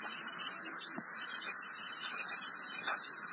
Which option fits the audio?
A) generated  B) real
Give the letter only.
B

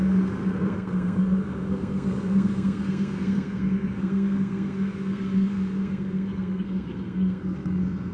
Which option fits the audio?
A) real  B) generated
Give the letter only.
B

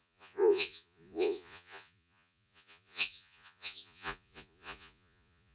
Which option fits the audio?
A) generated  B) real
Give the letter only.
A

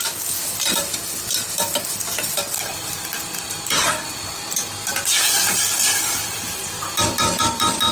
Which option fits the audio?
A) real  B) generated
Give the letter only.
B